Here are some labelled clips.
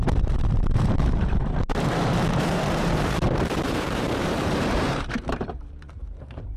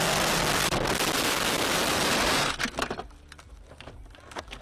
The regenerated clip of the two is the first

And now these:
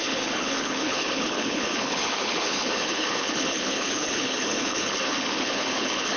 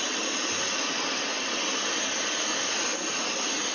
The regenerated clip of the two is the first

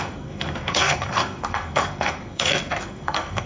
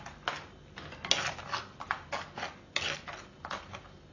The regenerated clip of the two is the first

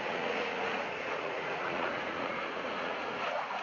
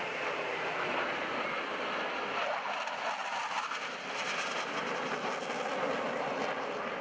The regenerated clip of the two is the first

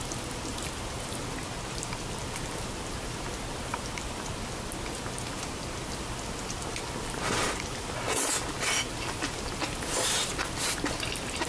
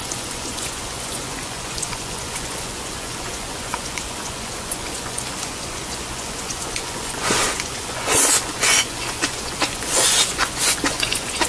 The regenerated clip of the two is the second